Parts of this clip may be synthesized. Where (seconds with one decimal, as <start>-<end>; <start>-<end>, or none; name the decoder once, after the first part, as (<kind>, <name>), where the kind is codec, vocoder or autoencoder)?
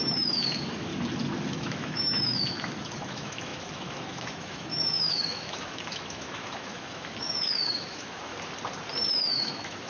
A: 0.0-0.9 (autoencoder, DAC-VAE); 1.5-8.3; 9.1-9.9